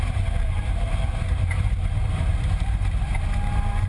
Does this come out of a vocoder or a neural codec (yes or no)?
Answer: yes